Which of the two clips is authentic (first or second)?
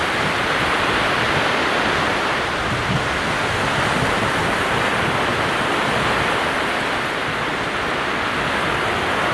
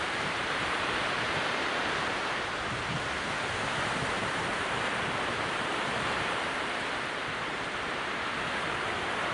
first